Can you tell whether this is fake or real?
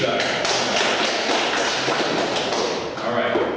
real